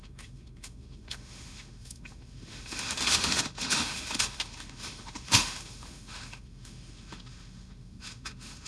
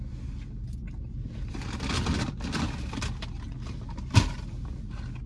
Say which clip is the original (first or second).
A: second